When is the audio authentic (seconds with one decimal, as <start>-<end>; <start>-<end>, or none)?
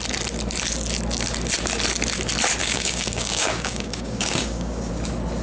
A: 0.0-2.6; 4.9-5.4